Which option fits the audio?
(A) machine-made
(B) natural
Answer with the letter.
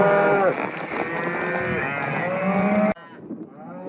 B